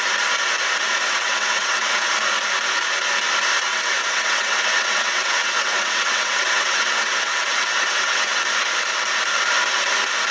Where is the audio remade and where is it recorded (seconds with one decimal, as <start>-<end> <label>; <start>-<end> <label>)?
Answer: 0.0-0.8 recorded; 0.8-2.1 remade; 2.1-3.7 recorded; 3.7-8.4 remade; 8.4-10.3 recorded